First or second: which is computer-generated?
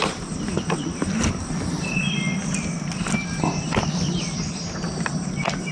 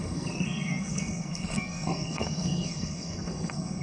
second